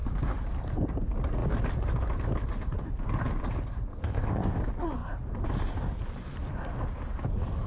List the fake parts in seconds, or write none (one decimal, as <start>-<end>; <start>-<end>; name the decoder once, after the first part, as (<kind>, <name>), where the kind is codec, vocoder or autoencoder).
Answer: 4.0-4.6 (codec, ZipCodec)